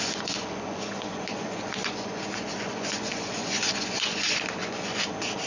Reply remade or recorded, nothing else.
remade